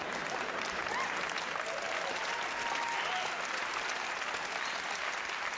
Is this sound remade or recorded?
recorded